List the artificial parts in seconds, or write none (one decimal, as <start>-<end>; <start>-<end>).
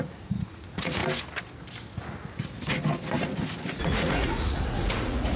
0.0-1.0; 3.8-5.4